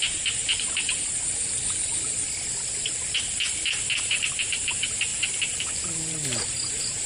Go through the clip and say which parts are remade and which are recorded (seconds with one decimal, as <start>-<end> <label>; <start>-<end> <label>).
0.0-1.9 remade; 1.9-4.0 recorded; 4.0-7.1 remade